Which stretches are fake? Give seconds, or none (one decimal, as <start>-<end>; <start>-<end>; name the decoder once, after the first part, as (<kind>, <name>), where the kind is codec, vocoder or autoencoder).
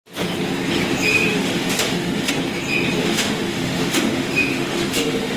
1.1-2.3 (autoencoder, DAC-VAE); 3.0-5.4